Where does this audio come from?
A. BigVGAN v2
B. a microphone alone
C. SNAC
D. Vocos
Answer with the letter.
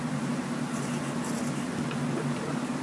B